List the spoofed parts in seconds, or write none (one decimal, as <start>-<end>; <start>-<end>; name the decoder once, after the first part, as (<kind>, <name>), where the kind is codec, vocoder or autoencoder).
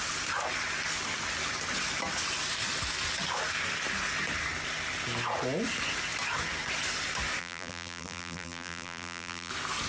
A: 7.4-9.5 (vocoder, BigVGAN v2)